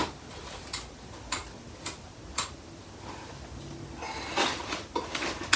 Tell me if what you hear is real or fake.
real